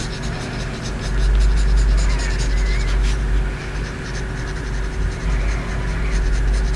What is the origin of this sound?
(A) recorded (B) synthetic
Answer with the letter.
A